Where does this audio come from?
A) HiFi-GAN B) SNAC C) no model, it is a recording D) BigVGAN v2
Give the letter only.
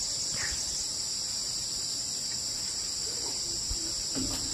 C